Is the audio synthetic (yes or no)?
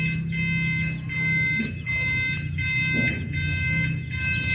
no